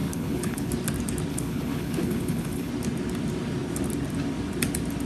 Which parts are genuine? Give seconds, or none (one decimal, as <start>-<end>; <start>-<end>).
0.7-1.3; 2.7-5.1